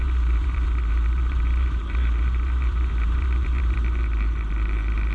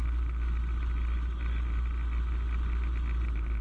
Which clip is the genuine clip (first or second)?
second